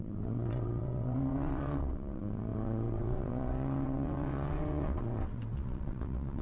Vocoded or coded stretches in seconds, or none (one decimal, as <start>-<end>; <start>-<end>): 0.0-6.4